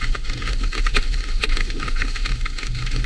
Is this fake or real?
fake